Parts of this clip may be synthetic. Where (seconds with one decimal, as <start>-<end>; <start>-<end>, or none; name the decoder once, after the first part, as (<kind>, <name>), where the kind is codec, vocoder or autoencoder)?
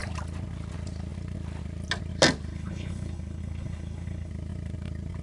2.5-4.3 (codec, HILCodec)